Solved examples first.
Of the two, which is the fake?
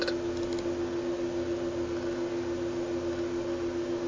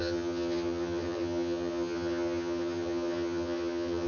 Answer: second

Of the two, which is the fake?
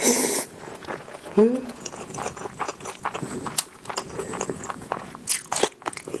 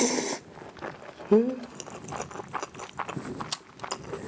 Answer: first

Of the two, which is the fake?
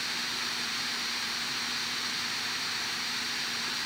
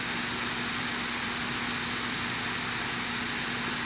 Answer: first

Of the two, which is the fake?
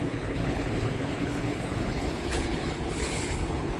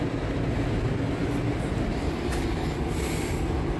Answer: first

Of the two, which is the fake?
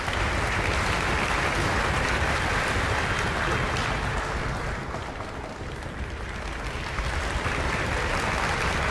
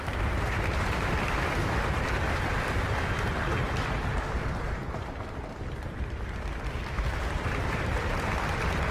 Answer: second